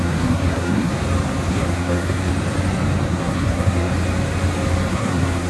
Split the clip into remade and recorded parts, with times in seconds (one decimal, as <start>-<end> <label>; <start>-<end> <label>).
0.0-0.9 remade; 0.9-1.5 recorded; 1.5-2.3 remade; 2.3-3.1 recorded; 3.1-3.9 remade; 3.9-4.9 recorded; 4.9-5.5 remade